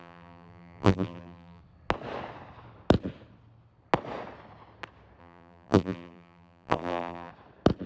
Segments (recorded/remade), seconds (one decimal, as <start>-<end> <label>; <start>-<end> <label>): 0.0-1.6 remade; 1.6-5.2 recorded; 5.2-7.3 remade; 7.3-7.9 recorded